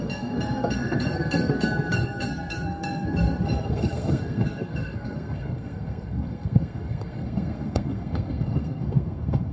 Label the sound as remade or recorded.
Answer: remade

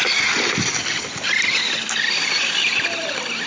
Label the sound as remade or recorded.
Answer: recorded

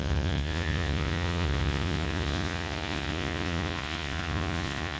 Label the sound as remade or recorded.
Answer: remade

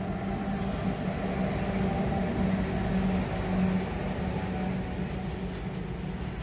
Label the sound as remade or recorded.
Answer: recorded